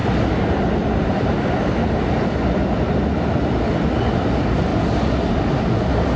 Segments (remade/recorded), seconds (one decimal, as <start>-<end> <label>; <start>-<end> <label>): 0.0-6.2 recorded